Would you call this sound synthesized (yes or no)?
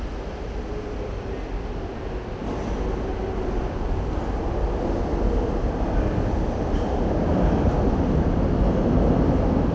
no